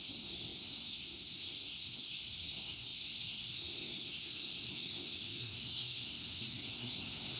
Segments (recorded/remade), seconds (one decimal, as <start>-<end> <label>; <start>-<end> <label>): 0.0-7.4 remade